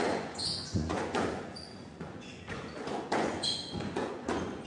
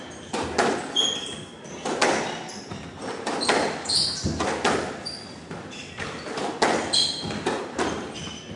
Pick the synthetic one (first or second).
first